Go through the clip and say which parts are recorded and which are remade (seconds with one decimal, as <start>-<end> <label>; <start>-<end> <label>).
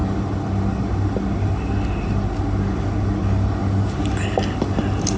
0.0-5.2 recorded